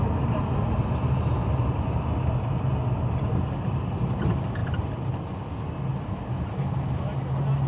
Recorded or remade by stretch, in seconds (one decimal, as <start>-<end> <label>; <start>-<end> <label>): 0.0-7.7 recorded